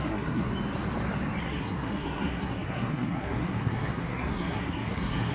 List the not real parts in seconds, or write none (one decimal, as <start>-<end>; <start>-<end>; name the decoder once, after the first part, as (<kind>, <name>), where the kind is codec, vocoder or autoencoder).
0.0-0.5 (codec, SNAC); 1.4-5.3